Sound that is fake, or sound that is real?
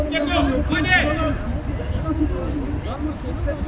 real